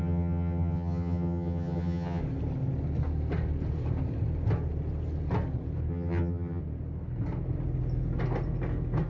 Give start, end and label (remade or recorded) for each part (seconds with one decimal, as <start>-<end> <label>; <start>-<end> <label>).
0.0-2.2 remade; 2.2-5.9 recorded; 5.9-6.6 remade; 6.6-9.1 recorded